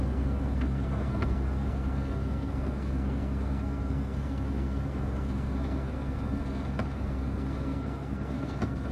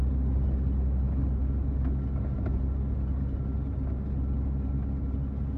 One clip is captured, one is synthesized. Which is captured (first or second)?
second